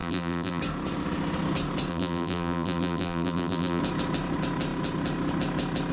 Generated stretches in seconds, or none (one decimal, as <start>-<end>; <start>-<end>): 0.0-0.6; 1.9-3.8